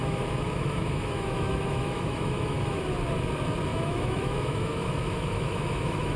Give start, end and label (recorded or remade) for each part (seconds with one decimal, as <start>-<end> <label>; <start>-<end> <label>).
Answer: 0.0-2.8 remade; 2.8-3.7 recorded; 3.7-6.2 remade